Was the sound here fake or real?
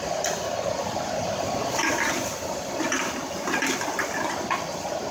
fake